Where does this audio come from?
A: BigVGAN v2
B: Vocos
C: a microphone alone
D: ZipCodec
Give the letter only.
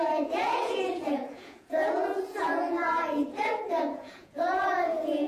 B